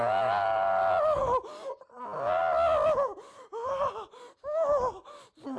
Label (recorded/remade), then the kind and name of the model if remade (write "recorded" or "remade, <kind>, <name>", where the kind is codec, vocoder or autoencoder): recorded